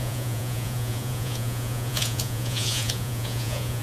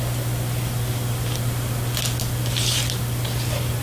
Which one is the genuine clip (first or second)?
second